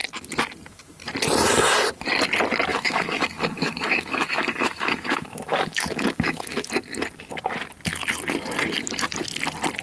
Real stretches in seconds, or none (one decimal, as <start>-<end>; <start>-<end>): 0.0-2.7; 6.7-9.8